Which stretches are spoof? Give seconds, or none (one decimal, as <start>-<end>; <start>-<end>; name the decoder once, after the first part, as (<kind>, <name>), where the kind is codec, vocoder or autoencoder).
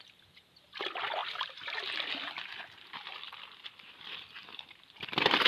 none